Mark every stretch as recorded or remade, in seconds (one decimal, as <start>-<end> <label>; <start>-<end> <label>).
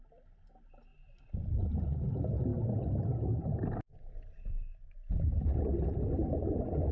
0.0-6.9 recorded